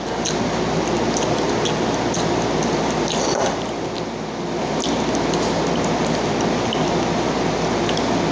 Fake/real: real